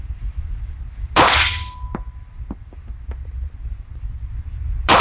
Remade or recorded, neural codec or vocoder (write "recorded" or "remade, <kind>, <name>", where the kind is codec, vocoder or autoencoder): recorded